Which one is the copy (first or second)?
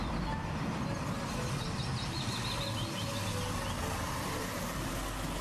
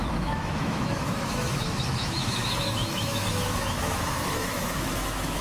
second